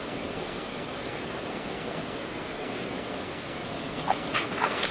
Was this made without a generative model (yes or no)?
no